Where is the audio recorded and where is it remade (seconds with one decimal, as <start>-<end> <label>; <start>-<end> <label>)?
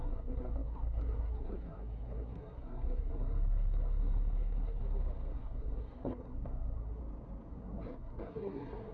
0.0-4.8 remade; 4.8-5.3 recorded; 5.3-7.0 remade; 7.0-7.5 recorded; 7.5-8.9 remade